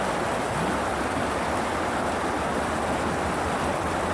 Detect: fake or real real